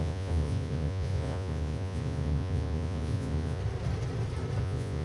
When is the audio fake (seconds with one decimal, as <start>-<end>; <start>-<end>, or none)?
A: 0.0-3.6; 4.6-5.0